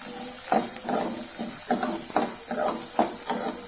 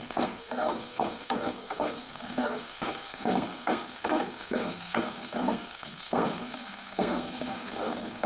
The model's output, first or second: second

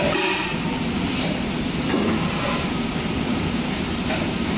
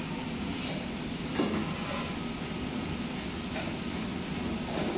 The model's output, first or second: first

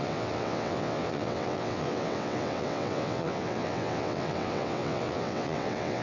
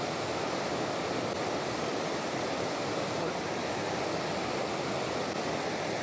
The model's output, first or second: first